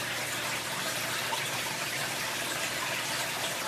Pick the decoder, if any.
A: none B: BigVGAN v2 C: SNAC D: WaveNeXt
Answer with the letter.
A